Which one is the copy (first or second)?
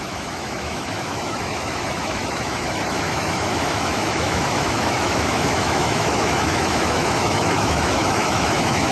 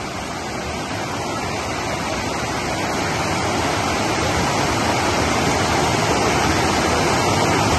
first